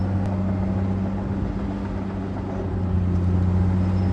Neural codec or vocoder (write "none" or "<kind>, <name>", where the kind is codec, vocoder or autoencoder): none